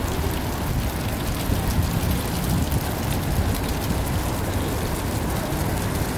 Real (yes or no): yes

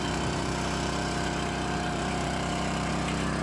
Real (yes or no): no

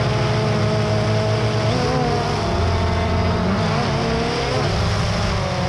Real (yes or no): yes